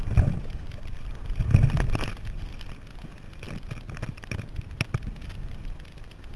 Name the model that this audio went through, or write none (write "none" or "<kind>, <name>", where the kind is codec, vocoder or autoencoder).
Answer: none